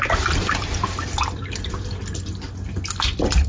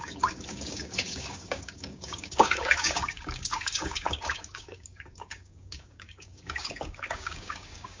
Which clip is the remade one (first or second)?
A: second